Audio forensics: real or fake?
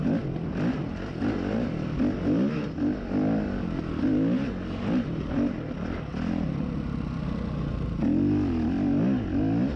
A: real